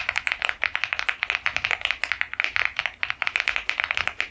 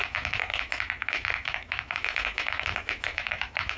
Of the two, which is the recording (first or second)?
first